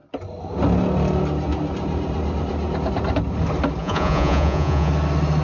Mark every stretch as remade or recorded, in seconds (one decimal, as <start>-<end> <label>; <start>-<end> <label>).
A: 0.0-3.8 recorded; 3.8-4.9 remade; 4.9-5.4 recorded